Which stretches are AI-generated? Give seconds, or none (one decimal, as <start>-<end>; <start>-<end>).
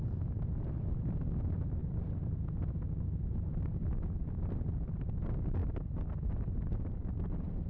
none